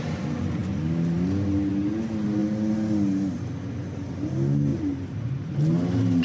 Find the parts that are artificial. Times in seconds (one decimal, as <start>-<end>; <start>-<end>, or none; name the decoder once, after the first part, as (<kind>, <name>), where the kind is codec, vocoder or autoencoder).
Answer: none